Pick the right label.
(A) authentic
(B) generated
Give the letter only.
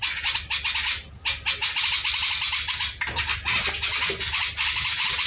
A